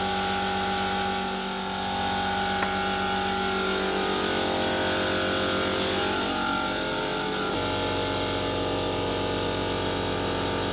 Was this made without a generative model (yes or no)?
yes